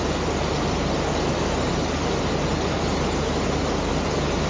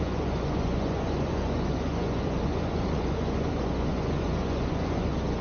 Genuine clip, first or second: first